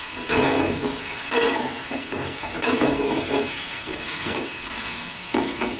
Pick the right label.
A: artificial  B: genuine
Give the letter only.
A